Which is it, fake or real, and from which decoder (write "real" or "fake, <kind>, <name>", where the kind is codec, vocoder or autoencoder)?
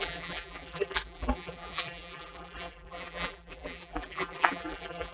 fake, vocoder, BigVGAN v2